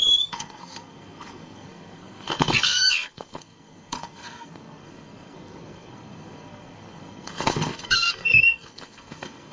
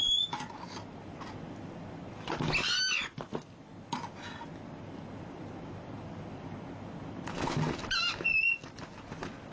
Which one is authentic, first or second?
second